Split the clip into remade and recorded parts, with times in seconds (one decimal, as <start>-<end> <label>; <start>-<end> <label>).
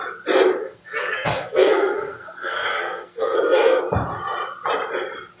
0.0-0.6 recorded; 0.6-3.8 remade; 3.8-5.4 recorded